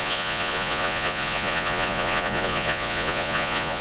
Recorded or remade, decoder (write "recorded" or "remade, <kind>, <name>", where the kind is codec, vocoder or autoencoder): remade, vocoder, Vocos